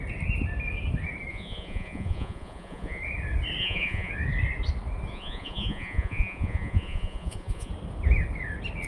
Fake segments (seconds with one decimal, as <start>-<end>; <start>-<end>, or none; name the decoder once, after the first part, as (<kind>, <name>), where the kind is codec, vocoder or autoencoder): 1.3-3.0 (vocoder, Vocos); 3.6-4.1; 5.1-7.7

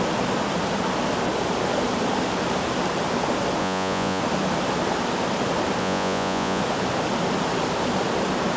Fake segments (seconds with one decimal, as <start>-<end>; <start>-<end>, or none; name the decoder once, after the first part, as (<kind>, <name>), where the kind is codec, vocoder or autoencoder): 3.6-4.2 (vocoder, Vocos); 5.8-6.6

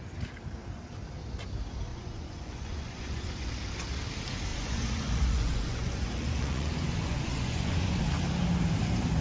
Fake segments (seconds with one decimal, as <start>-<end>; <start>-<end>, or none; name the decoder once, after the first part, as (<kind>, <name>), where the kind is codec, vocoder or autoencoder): 1.9-3.5 (vocoder, Vocos); 4.5-8.0

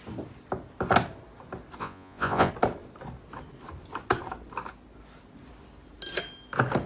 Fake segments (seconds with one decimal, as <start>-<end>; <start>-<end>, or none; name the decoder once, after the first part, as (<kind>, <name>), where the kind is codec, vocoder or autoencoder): 1.8-2.5 (vocoder, Vocos)

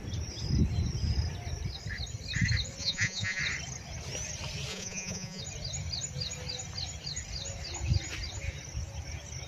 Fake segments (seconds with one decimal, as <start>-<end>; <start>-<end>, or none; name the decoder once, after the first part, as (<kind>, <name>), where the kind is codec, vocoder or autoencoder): 2.8-3.4 (vocoder, Vocos); 4.7-5.4

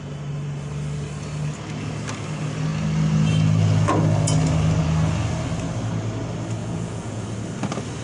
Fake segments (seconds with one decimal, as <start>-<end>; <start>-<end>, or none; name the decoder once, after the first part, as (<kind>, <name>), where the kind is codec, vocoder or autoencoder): 6.6-7.2 (vocoder, Vocos)

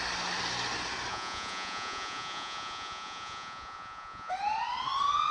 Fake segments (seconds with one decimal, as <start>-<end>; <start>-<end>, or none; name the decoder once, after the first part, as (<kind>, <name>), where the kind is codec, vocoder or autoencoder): 1.1-4.3 (vocoder, Vocos)

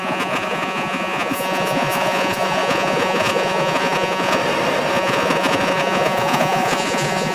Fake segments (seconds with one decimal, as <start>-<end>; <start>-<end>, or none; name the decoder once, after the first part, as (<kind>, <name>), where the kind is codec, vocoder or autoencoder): 0.0-4.4 (vocoder, Vocos); 4.9-7.3